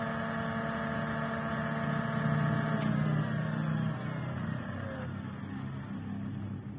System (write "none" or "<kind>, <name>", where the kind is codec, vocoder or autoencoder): none